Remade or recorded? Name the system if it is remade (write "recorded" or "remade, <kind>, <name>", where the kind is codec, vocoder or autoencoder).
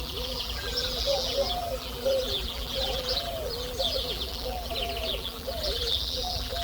remade, vocoder, BigVGAN v2